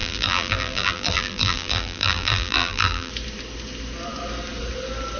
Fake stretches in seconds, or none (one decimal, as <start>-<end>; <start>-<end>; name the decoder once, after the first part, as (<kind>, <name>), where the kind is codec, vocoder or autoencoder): 0.0-3.1 (vocoder, BigVGAN v2)